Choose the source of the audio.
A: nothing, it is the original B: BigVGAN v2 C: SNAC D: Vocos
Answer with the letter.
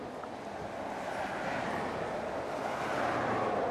A